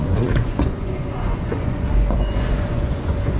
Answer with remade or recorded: remade